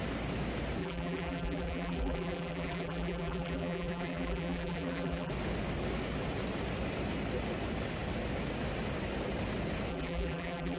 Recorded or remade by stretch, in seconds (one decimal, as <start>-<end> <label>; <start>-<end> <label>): 0.0-0.8 recorded; 0.8-5.3 remade; 5.3-9.9 recorded; 9.9-10.8 remade